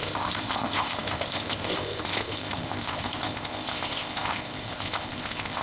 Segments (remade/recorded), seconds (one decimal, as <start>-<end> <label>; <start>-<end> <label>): 0.0-5.6 remade